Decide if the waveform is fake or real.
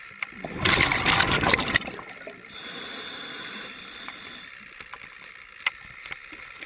real